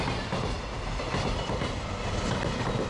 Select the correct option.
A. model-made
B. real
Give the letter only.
B